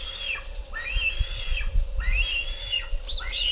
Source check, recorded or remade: recorded